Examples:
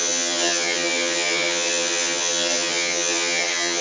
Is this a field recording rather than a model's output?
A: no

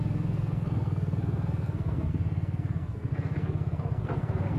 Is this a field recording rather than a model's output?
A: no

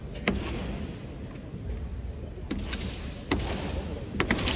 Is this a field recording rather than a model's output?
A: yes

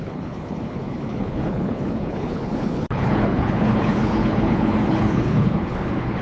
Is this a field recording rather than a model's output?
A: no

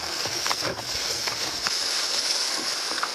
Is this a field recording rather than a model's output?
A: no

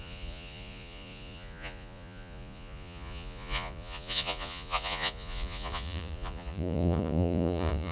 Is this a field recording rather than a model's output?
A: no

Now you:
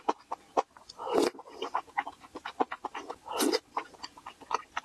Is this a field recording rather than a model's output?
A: yes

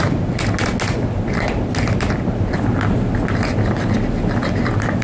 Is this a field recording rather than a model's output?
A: yes